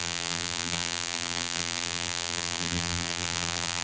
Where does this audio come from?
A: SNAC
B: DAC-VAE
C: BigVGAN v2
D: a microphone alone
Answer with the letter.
C